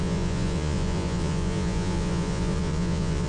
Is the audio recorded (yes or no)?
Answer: no